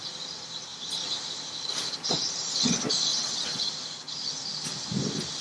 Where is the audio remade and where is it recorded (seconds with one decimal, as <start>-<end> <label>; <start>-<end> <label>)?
0.0-3.1 recorded; 3.1-3.7 remade; 3.7-5.4 recorded